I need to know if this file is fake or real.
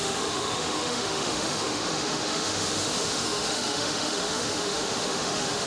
fake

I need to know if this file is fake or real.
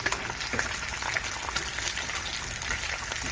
real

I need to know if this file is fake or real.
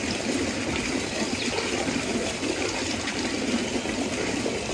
real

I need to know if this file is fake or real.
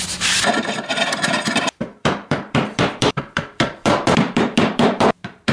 fake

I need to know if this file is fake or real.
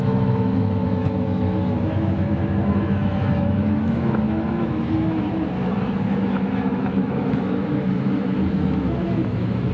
fake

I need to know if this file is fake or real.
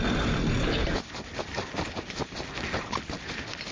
real